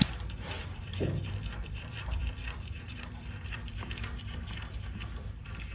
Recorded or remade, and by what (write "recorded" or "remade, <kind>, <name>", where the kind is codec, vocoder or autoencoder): remade, vocoder, BigVGAN v2